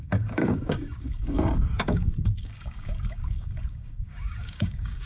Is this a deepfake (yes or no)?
yes